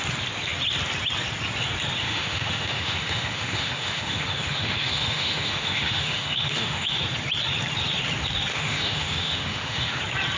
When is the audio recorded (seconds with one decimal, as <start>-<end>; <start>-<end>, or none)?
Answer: 0.0-2.0; 7.0-8.5; 10.0-10.4

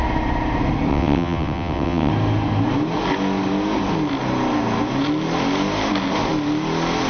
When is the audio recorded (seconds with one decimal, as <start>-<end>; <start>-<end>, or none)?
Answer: 0.0-0.9; 2.1-7.1

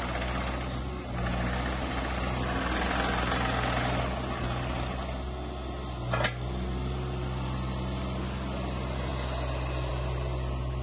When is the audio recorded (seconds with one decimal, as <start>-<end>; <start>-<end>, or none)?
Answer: 0.0-10.8

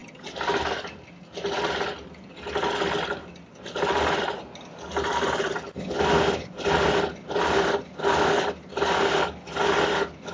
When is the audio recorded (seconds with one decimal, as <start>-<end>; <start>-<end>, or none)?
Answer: 1.1-7.1; 8.0-10.3

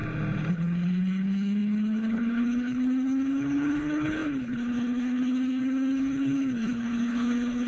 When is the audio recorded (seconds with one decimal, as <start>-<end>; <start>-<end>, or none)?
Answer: 0.0-0.5

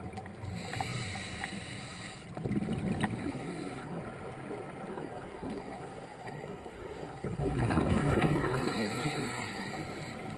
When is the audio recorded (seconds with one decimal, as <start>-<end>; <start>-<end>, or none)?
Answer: 0.0-3.2; 4.0-4.9; 9.7-10.4

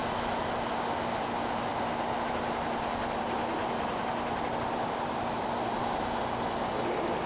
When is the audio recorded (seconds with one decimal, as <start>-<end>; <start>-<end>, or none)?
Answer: 0.0-7.3

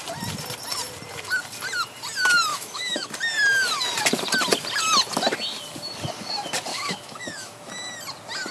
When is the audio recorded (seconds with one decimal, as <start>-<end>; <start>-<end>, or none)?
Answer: 0.0-2.5; 3.1-6.7; 7.7-8.5